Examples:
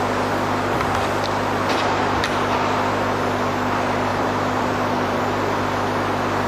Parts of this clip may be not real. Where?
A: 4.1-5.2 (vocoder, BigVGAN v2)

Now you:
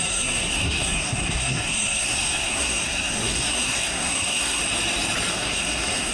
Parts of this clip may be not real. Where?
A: 0.0-4.6 (codec, SNAC); 5.3-6.1

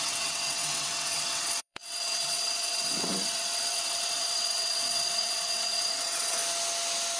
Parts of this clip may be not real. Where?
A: 0.0-6.4 (vocoder, WaveNeXt)

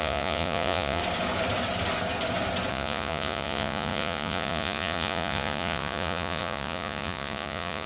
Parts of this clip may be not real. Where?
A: 0.0-1.0 (vocoder, Vocos); 2.7-7.9